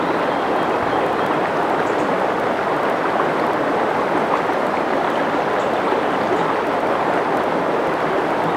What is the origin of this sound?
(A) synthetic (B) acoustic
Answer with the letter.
B